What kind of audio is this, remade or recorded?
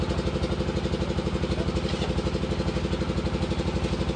recorded